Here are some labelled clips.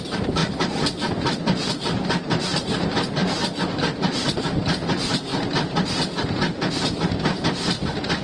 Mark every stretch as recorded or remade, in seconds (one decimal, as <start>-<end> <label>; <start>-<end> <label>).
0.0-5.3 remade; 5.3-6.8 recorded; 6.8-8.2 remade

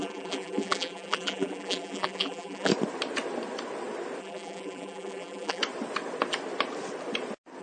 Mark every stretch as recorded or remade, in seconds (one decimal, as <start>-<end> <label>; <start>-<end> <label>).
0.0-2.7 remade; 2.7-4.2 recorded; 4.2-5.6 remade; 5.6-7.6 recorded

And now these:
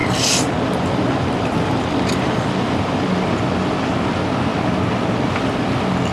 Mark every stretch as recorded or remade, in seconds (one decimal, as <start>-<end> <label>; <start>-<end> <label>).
0.0-3.7 remade; 3.7-6.1 recorded

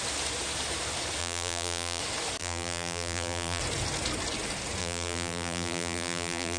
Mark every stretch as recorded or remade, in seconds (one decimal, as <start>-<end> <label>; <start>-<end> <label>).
0.0-1.2 recorded; 1.2-2.0 remade; 2.0-2.4 recorded; 2.4-3.6 remade; 3.6-4.8 recorded; 4.8-6.6 remade

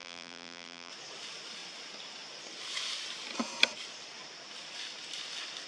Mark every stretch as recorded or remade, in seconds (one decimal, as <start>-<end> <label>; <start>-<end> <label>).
0.0-0.9 remade; 0.9-5.7 recorded